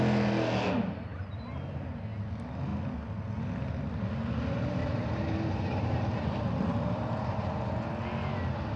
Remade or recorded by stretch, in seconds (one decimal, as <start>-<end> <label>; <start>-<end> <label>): 0.0-4.8 recorded; 4.8-7.9 remade; 7.9-8.8 recorded